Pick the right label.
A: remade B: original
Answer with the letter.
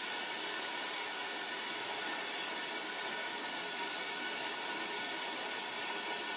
B